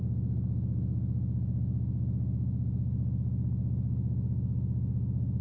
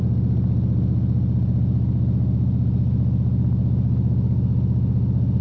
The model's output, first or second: first